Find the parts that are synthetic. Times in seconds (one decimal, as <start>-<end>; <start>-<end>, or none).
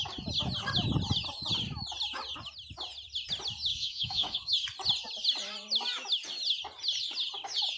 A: 3.7-4.5